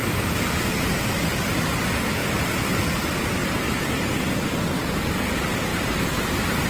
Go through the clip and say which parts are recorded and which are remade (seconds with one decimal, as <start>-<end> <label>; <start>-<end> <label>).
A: 0.0-6.7 recorded